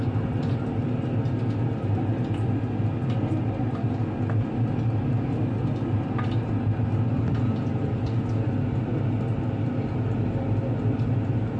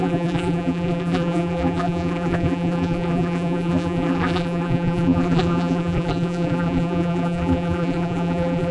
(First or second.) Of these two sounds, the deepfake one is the second